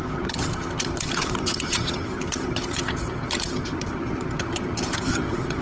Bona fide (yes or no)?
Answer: no